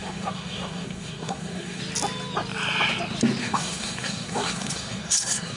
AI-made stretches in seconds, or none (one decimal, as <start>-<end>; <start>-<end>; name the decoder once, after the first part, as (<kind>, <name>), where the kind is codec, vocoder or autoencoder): 0.0-1.8 (codec, SNAC); 3.4-5.6